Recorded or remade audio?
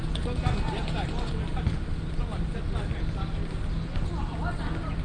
recorded